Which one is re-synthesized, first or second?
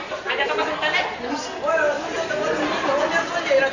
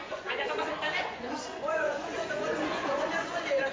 second